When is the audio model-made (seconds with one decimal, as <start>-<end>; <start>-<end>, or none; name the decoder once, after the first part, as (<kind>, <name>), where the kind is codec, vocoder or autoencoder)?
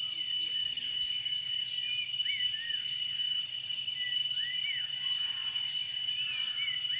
0.6-1.5 (codec, DAC)